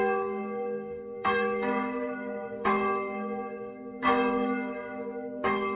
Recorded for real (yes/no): no